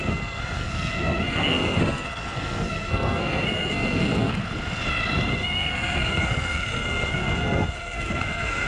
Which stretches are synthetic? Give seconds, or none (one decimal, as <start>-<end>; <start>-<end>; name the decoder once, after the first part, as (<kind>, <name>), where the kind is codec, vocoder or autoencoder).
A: 0.0-4.4 (codec, SNAC); 5.3-8.7